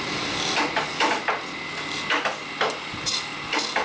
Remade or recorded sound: recorded